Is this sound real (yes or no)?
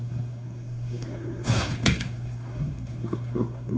no